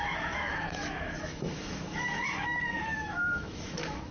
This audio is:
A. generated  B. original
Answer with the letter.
A